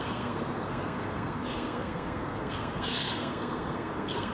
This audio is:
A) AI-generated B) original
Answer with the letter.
A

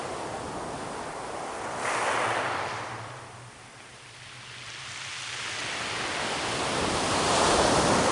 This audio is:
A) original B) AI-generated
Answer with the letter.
A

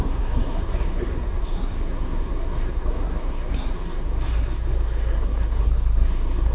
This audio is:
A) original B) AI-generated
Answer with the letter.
B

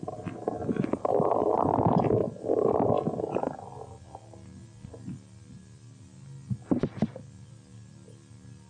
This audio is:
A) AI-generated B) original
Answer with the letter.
B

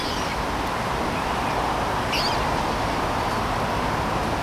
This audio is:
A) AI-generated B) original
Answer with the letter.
B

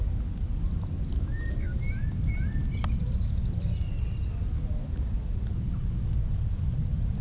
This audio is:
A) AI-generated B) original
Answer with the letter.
B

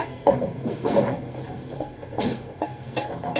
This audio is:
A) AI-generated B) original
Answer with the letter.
A